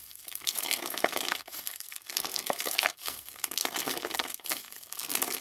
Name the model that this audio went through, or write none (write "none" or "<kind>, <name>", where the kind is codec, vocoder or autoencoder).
codec, SNAC